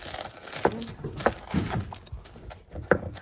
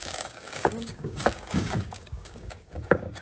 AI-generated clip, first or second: second